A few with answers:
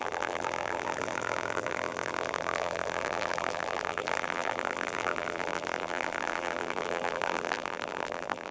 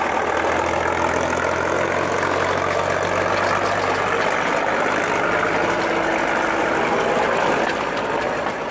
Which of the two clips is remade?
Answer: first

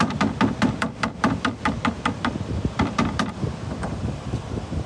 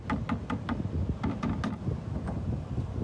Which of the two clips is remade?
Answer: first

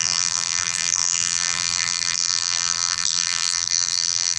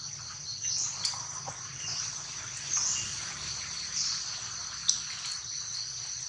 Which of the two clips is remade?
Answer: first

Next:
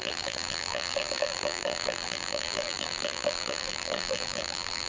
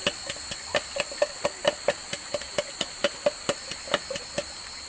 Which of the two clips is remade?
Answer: first